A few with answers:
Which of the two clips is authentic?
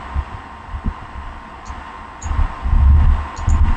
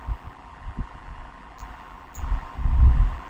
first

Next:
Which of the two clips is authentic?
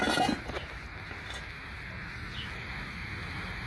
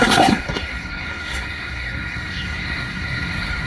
first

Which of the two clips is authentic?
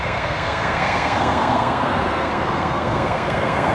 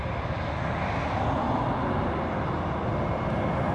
second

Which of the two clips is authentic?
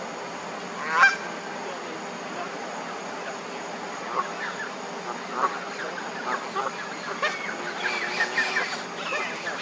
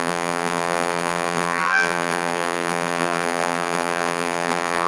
first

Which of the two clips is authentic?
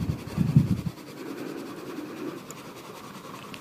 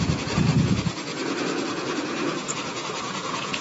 first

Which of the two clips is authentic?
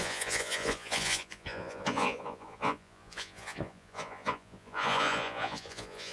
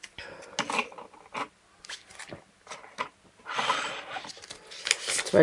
second